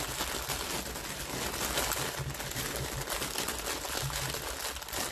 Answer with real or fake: real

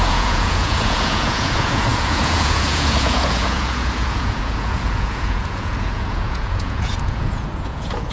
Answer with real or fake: fake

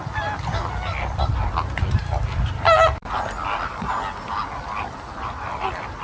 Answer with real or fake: real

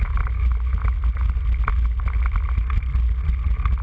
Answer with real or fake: real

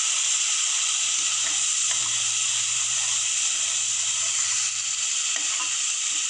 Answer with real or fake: fake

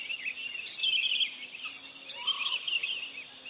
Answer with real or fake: real